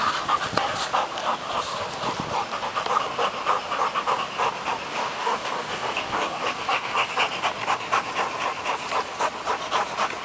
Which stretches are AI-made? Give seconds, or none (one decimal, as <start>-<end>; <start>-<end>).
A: 4.9-7.1